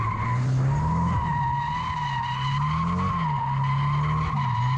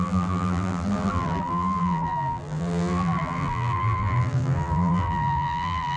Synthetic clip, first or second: second